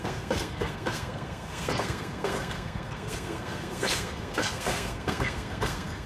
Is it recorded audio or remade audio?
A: remade